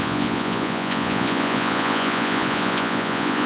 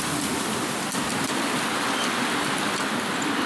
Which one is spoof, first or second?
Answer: first